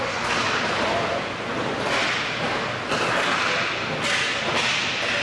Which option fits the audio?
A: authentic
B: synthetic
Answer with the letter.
A